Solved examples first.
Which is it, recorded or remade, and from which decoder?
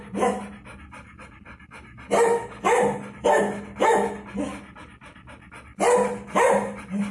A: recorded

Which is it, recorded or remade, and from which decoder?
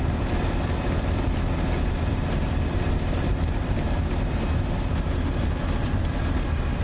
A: recorded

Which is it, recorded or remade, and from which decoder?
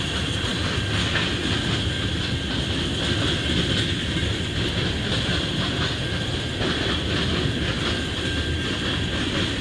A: recorded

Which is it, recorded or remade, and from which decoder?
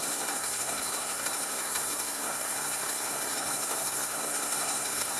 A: remade, codec, SNAC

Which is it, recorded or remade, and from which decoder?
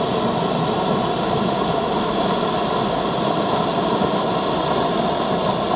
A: recorded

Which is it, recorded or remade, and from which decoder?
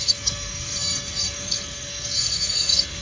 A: remade, codec, SNAC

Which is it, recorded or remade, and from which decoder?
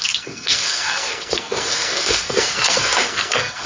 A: remade, codec, SNAC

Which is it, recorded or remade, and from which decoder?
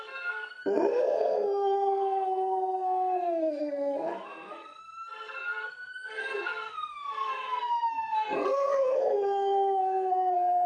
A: remade, codec, SNAC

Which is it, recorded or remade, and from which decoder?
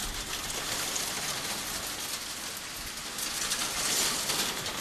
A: recorded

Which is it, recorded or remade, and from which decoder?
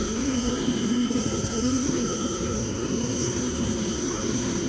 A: remade, codec, SNAC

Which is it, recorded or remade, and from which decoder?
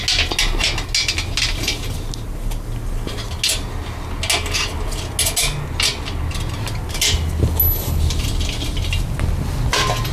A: recorded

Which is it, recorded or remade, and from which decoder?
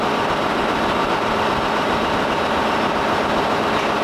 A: recorded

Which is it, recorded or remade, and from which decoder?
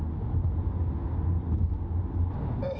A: recorded